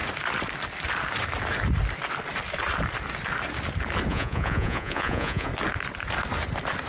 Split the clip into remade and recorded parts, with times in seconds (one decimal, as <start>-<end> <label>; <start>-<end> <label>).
0.0-4.1 recorded; 4.1-5.5 remade; 5.5-6.9 recorded